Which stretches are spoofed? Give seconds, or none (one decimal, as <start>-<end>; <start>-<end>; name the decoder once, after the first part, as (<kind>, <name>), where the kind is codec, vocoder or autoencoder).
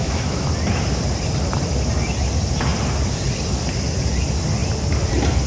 0.0-0.5 (autoencoder, DAC-VAE)